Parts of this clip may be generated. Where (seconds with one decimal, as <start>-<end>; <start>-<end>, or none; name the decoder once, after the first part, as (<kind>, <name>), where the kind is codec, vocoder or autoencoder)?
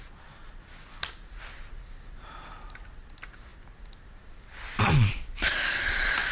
none